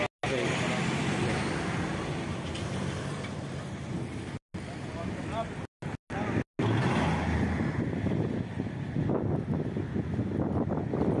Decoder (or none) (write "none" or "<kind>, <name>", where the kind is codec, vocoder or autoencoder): none